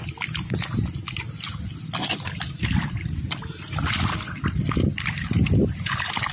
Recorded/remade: recorded